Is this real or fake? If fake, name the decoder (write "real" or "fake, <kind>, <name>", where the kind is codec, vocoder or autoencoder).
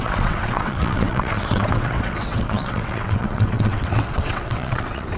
fake, vocoder, WaveNeXt